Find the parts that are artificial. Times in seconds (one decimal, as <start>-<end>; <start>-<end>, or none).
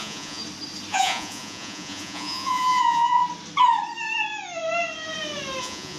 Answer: 0.0-0.4; 0.9-3.2; 5.6-6.0